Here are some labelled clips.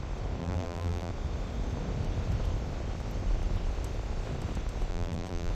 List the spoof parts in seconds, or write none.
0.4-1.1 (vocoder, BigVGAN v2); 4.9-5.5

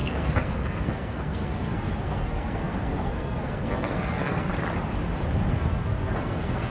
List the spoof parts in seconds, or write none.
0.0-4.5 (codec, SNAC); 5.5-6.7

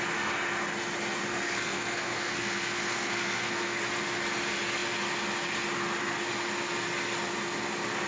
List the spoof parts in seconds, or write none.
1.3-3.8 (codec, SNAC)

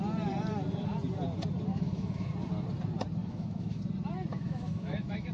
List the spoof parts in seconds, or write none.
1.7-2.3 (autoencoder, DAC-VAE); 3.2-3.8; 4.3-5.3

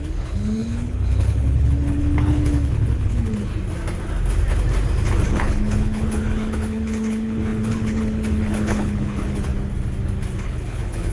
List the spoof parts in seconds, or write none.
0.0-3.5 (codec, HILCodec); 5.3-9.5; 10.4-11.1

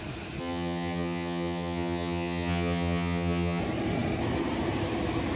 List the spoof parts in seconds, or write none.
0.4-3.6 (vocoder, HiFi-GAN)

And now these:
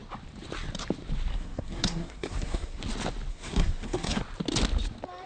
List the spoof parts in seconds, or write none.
1.3-2.8 (codec, SNAC); 3.3-4.2